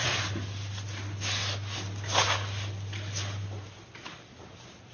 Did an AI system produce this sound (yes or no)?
no